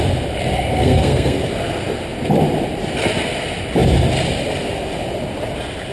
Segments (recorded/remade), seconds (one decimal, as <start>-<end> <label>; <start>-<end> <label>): 0.0-0.7 recorded; 0.7-1.4 remade; 1.4-5.9 recorded